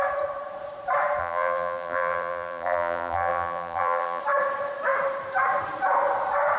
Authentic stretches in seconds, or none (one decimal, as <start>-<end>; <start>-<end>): 0.0-1.2; 4.2-6.6